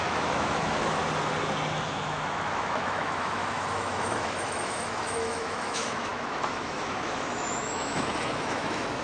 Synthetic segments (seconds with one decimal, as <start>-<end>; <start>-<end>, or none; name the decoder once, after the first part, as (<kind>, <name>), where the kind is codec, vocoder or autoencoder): 0.0-1.0 (autoencoder, DAC-VAE); 1.9-9.0